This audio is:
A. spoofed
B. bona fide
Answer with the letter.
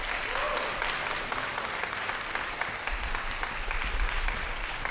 B